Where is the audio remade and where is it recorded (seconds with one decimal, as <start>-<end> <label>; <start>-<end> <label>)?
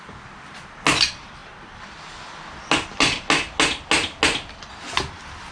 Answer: 0.0-5.5 recorded